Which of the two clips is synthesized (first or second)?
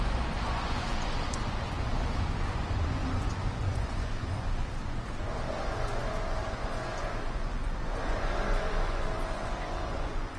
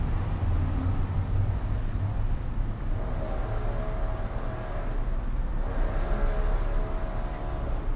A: first